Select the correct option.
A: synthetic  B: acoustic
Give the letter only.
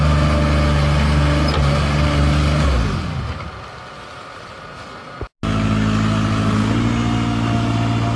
B